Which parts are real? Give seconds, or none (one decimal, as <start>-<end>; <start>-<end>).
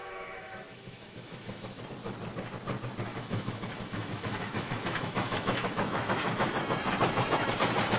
1.8-3.1; 7.5-8.0